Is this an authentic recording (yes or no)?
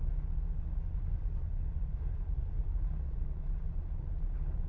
no